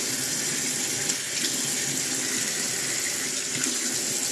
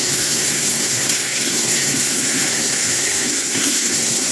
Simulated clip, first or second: second